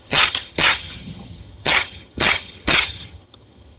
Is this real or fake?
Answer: fake